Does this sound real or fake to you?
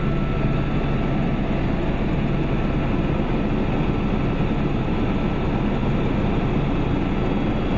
real